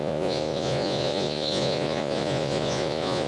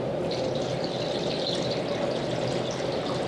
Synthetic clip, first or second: first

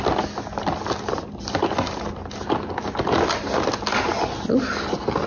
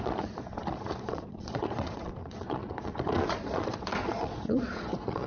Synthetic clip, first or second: second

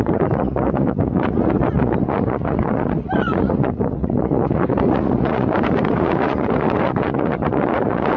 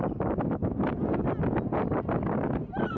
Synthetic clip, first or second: first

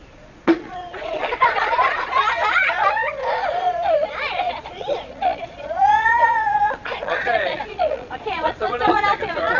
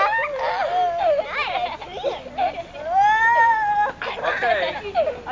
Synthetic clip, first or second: first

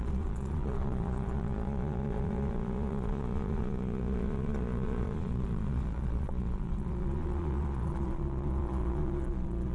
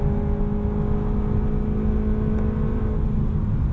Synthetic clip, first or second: first